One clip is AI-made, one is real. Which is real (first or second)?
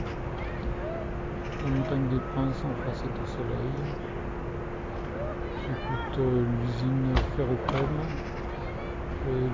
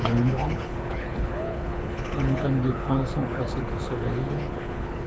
first